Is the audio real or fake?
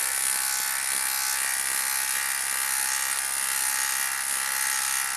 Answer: real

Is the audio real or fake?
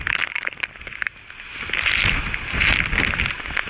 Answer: real